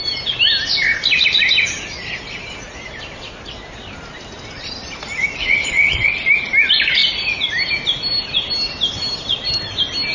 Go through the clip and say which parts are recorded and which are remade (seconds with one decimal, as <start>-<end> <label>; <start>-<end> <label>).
0.0-5.4 recorded; 5.4-6.1 remade; 6.1-10.1 recorded